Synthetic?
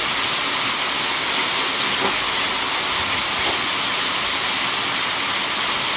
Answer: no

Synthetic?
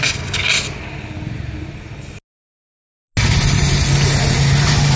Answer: no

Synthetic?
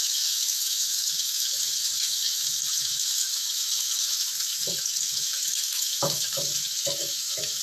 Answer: yes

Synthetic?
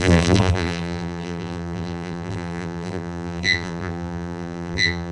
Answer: yes